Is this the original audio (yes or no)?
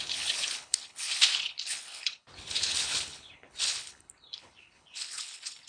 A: no